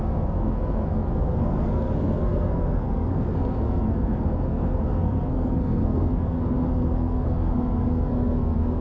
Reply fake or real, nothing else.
fake